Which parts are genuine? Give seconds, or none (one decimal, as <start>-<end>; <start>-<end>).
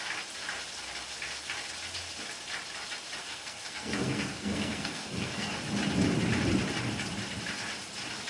0.0-3.2; 5.5-8.3